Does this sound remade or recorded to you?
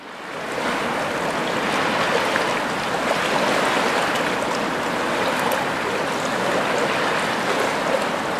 recorded